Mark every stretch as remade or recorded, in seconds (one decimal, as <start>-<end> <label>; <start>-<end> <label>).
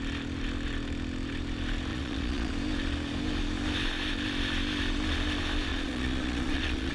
0.0-1.9 recorded; 1.9-2.5 remade; 2.5-5.7 recorded; 5.7-6.9 remade